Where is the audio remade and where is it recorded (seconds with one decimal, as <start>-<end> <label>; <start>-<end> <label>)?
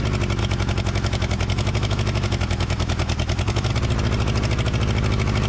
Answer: 0.0-0.4 recorded; 0.4-3.7 remade; 3.7-5.5 recorded